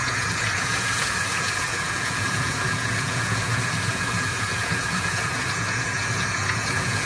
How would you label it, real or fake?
fake